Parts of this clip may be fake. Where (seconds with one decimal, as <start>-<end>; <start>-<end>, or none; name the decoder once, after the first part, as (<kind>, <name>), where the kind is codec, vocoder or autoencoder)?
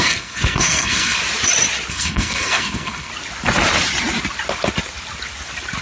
0.0-1.2 (codec, SNAC); 1.9-3.1